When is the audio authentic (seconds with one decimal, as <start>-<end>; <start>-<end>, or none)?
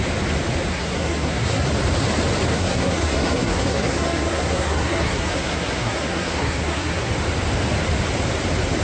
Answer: 0.0-0.7; 1.7-2.5; 7.1-8.8